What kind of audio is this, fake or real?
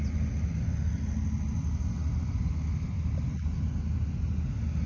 real